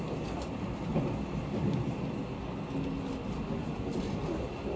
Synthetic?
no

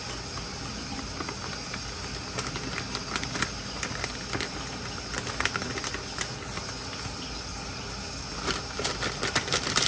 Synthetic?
no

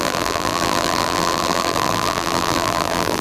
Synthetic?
yes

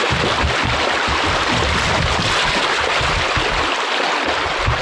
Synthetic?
no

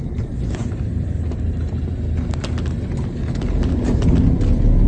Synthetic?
no